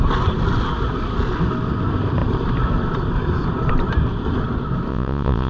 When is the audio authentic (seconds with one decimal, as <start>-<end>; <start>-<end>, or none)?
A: 0.0-4.9